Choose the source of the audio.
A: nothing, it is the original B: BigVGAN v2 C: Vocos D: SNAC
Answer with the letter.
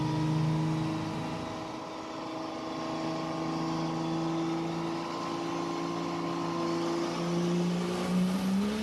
A